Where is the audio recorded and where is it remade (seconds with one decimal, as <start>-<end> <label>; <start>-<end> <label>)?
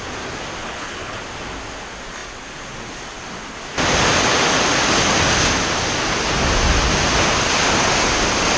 0.0-0.6 recorded; 0.6-1.2 remade; 1.2-8.6 recorded